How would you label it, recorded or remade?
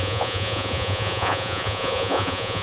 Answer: remade